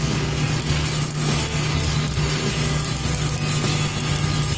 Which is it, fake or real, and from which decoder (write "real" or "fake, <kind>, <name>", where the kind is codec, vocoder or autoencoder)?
real